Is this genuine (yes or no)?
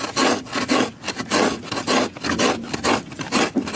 yes